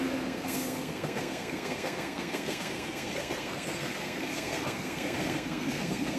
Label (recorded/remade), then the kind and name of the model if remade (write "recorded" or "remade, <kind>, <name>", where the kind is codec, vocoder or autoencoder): remade, codec, SNAC